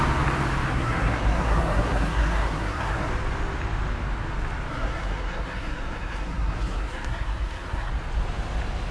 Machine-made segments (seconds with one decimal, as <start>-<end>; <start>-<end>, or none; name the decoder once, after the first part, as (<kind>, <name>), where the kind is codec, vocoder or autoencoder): 0.7-3.1 (codec, SNAC); 4.7-7.9